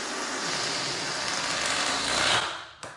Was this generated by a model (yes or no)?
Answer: no